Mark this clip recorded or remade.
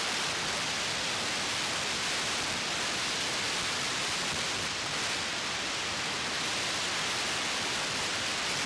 recorded